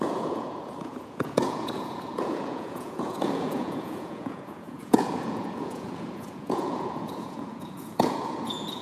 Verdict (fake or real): fake